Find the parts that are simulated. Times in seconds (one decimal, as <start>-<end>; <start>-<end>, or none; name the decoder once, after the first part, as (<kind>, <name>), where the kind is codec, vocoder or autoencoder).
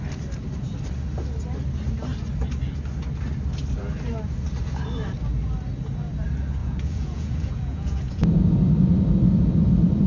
6.6-8.6 (vocoder, Vocos)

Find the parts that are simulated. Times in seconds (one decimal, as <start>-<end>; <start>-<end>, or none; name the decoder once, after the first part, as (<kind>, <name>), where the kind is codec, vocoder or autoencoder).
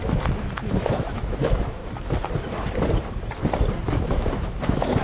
0.0-1.8 (autoencoder, DAC-VAE); 4.1-5.0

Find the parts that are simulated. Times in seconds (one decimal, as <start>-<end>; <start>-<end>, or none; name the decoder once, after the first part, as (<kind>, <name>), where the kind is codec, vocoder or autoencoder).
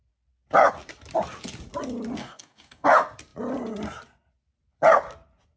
2.2-2.9 (codec, DAC)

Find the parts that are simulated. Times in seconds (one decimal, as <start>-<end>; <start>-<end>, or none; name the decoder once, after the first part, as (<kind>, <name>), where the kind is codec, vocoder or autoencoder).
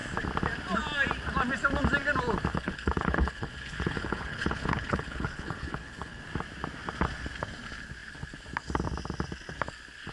2.5-6.2 (codec, HILCodec)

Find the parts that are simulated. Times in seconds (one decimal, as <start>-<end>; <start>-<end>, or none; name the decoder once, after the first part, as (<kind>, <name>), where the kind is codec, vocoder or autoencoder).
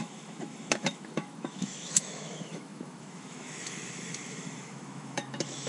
0.0-5.7 (autoencoder, DAC-VAE)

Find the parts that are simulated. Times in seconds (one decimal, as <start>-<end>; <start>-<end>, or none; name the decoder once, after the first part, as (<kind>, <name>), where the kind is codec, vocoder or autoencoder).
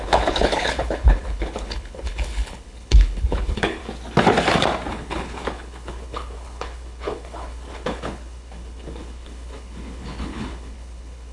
0.0-3.8 (codec, HILCodec); 4.9-11.3